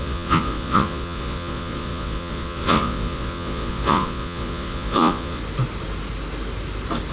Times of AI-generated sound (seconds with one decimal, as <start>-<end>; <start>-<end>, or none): 0.0-5.4